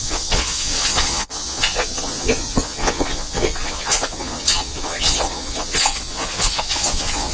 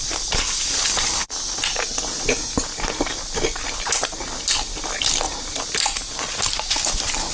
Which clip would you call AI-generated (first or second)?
first